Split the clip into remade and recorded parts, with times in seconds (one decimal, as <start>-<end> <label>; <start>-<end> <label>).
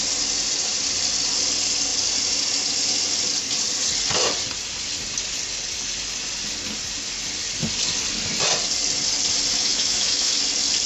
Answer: 0.0-9.5 recorded; 9.5-10.4 remade; 10.4-10.9 recorded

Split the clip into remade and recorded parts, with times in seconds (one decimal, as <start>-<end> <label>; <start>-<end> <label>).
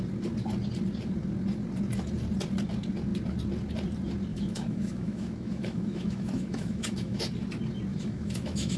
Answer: 0.0-4.3 recorded; 4.3-7.2 remade; 7.2-7.9 recorded; 7.9-8.8 remade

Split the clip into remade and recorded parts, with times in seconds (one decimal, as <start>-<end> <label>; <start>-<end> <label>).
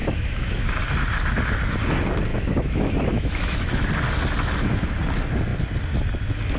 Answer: 0.0-0.7 remade; 0.7-2.3 recorded; 2.3-3.9 remade; 3.9-6.6 recorded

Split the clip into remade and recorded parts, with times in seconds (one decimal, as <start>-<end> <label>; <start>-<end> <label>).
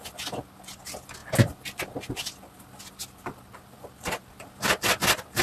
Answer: 0.0-5.4 recorded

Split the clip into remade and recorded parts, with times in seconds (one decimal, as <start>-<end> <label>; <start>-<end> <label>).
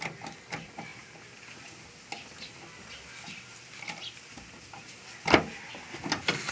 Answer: 0.0-6.5 recorded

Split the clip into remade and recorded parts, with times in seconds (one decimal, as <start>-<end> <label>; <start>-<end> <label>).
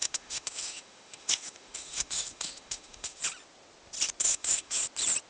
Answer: 0.0-3.2 remade; 3.2-4.2 recorded; 4.2-4.8 remade; 4.8-5.3 recorded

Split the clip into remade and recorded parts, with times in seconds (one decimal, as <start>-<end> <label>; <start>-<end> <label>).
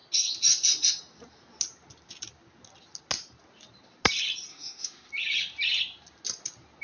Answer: 0.0-4.5 recorded; 4.5-5.1 remade; 5.1-6.8 recorded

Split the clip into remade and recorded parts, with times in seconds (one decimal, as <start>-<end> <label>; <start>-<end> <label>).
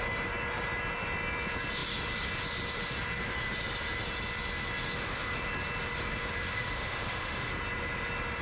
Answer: 0.0-6.5 recorded; 6.5-7.5 remade; 7.5-8.4 recorded